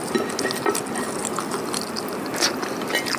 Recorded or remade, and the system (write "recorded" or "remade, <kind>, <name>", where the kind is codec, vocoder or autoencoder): recorded